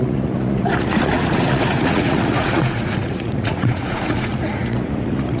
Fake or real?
fake